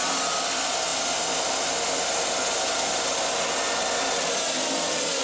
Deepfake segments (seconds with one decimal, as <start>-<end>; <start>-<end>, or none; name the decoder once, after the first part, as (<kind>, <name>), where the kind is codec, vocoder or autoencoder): none

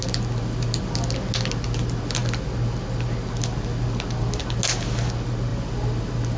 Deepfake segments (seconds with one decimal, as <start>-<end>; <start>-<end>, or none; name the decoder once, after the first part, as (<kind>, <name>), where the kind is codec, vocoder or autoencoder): none